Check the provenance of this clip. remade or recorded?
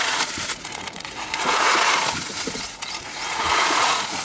remade